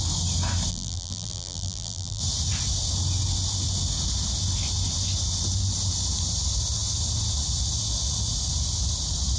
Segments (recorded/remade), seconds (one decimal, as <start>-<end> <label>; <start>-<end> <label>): 0.0-0.7 recorded; 0.7-2.2 remade; 2.2-9.4 recorded